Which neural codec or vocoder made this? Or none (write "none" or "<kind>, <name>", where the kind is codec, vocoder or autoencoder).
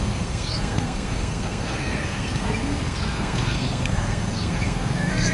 codec, SNAC